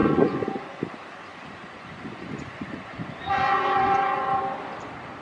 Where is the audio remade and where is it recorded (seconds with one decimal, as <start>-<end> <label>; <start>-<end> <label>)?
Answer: 0.0-0.8 remade; 0.8-1.3 recorded; 1.3-4.4 remade; 4.4-5.2 recorded

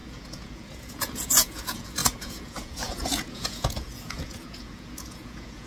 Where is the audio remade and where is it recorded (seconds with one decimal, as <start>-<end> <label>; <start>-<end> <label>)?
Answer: 0.0-5.7 remade